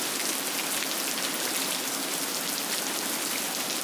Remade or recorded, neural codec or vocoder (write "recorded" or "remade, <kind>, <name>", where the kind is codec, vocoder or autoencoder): recorded